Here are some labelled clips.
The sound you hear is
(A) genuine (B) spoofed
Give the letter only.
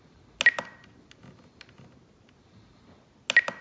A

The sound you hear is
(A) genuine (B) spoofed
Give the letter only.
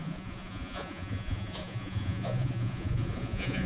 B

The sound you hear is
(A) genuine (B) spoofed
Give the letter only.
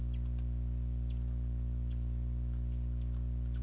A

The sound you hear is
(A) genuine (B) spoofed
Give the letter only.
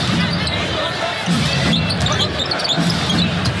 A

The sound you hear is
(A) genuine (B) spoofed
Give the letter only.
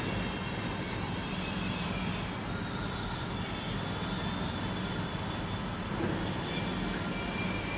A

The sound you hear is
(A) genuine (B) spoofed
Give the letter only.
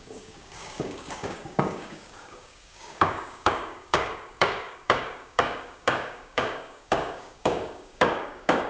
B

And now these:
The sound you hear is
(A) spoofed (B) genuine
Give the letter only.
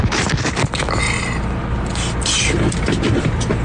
B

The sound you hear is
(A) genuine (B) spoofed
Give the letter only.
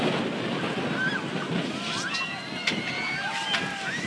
A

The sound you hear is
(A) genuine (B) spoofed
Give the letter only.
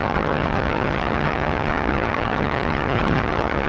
B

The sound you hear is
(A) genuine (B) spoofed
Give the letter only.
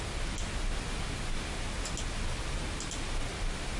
A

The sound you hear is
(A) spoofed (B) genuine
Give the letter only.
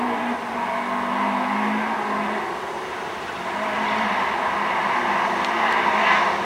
B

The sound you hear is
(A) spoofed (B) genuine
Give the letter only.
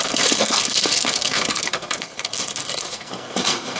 A